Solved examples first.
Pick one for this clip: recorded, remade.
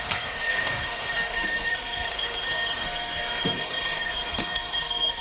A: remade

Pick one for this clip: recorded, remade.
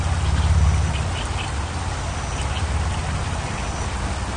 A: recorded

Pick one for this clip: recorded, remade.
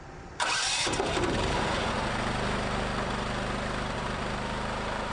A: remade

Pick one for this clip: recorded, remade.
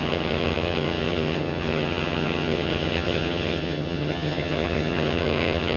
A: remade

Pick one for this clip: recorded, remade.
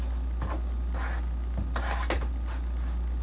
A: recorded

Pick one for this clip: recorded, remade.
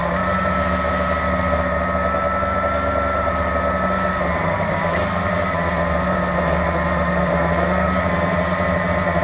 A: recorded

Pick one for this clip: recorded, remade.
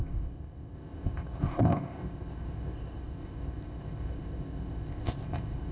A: remade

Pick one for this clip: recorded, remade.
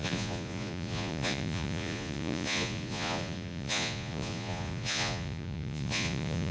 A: remade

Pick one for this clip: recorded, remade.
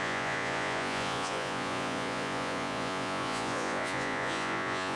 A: remade